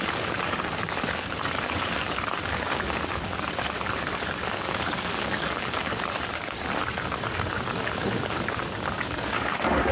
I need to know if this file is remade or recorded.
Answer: remade